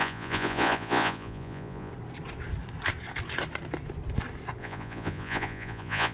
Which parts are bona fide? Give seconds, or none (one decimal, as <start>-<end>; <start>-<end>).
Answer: 1.9-4.6